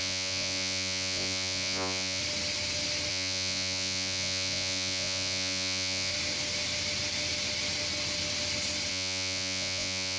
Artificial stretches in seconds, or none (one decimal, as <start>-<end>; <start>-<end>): 0.0-2.2; 3.1-6.1; 8.9-10.2